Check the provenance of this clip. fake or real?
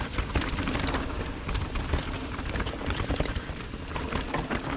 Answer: real